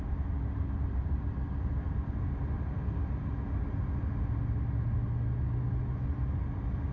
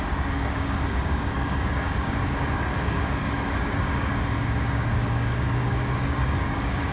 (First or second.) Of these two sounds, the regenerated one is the second